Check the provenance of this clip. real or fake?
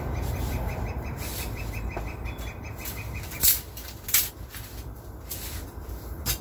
fake